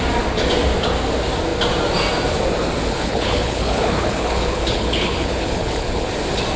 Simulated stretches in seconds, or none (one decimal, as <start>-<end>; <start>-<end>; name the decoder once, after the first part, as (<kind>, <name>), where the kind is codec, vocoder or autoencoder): 2.9-6.1 (codec, HILCodec)